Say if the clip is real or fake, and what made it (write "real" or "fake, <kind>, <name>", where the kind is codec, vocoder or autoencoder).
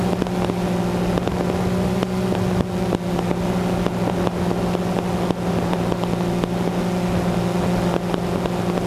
real